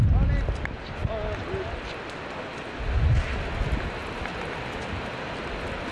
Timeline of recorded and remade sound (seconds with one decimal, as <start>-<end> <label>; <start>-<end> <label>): 0.0-5.9 recorded